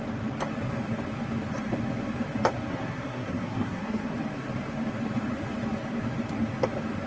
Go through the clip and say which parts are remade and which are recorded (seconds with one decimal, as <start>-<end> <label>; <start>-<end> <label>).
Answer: 0.0-2.7 recorded; 2.7-4.1 remade; 4.1-7.1 recorded